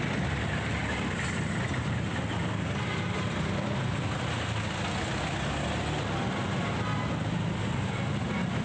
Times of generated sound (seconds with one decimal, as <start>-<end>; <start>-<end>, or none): none